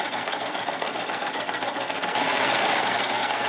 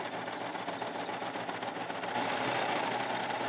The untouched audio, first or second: second